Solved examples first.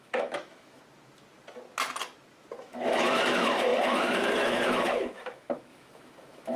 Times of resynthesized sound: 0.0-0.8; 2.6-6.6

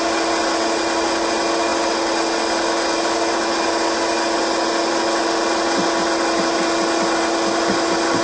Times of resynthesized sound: none

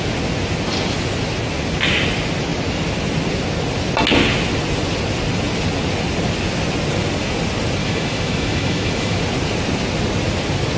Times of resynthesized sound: 7.8-9.2

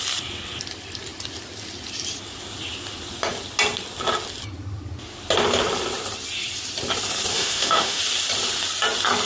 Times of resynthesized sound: 7.3-8.0

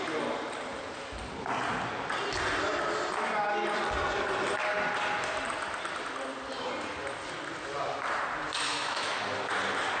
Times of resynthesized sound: 8.7-9.2